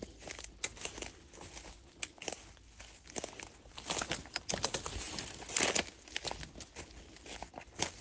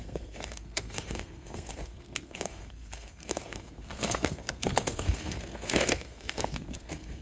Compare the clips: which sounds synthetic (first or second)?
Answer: second